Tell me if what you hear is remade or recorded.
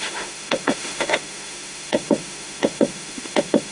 remade